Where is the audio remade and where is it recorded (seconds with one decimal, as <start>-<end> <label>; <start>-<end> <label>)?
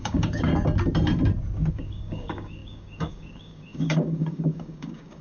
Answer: 0.0-0.5 remade; 0.5-1.7 recorded; 1.7-5.2 remade